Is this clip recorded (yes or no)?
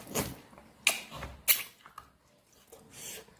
yes